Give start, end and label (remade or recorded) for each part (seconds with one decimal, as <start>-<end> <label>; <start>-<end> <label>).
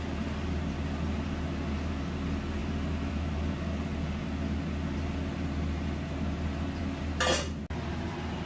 0.0-8.5 recorded